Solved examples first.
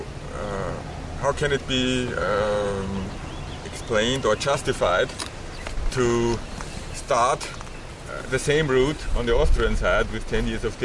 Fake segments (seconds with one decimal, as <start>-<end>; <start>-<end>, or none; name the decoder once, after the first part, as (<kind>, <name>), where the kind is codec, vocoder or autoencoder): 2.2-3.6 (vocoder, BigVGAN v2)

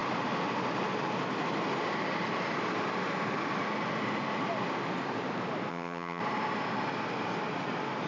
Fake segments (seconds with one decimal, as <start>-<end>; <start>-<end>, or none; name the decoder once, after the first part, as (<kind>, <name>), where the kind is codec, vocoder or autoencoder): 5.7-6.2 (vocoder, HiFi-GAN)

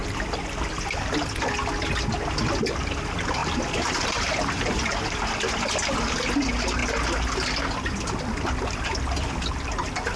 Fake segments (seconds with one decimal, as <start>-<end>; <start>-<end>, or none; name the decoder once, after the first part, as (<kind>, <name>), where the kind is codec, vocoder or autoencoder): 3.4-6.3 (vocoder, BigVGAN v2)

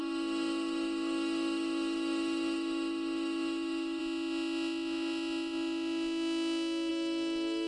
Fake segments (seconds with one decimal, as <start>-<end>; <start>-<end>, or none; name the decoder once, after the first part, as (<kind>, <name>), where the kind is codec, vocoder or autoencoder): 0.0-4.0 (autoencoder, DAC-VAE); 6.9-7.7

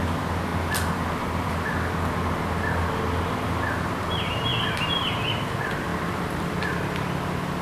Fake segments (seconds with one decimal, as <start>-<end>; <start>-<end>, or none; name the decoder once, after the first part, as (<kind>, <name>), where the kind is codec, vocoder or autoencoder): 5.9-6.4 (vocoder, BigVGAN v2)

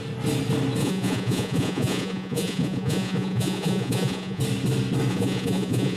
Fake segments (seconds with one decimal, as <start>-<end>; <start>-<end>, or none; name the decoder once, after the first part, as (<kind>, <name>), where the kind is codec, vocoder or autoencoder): 0.8-4.4 (vocoder, Vocos); 5.1-6.0

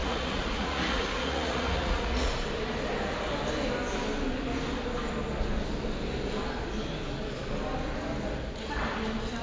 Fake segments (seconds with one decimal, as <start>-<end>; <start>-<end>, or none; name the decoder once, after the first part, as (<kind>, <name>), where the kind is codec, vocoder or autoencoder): 0.0-2.3 (vocoder, Vocos)